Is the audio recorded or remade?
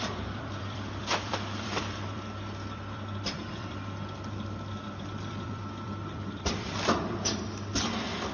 remade